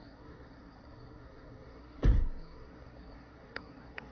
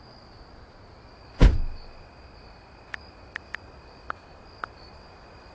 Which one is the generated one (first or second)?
first